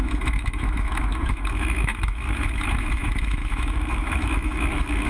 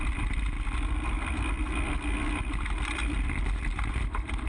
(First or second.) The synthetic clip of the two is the first